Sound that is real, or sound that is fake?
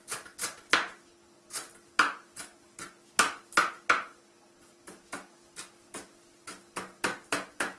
real